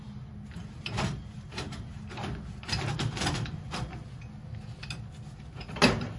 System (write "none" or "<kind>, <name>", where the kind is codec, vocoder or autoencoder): none